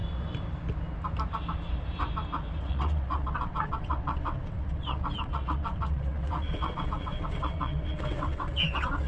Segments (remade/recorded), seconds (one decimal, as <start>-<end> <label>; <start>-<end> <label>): 0.0-2.6 recorded; 2.6-9.1 remade

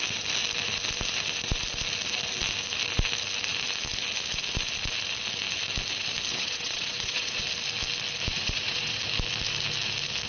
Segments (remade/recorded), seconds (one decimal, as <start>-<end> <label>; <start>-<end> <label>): 0.0-6.3 recorded; 6.3-7.4 remade; 7.4-8.3 recorded; 8.3-9.0 remade; 9.0-10.3 recorded

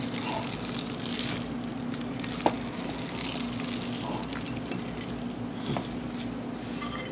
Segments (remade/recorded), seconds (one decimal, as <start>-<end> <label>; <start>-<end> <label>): 0.0-7.1 recorded

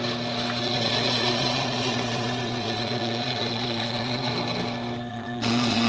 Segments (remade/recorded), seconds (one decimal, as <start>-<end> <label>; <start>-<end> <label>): 0.0-0.6 recorded; 0.6-4.3 remade; 4.3-5.1 recorded; 5.1-5.9 remade

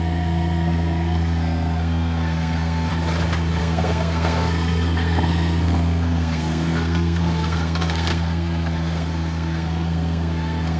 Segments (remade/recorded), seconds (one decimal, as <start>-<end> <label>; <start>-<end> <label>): 0.0-2.9 remade; 2.9-3.6 recorded; 3.6-10.8 remade

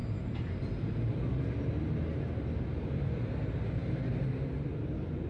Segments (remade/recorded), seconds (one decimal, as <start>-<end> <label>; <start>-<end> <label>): 0.0-5.3 recorded